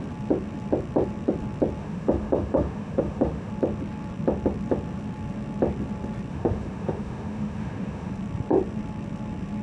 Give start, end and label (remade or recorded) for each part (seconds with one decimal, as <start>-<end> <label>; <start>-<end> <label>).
0.0-1.8 recorded; 1.8-3.5 remade; 3.5-6.3 recorded; 6.3-8.1 remade; 8.1-9.6 recorded